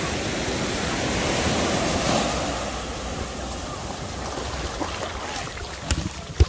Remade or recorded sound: recorded